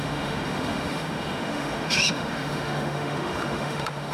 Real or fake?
fake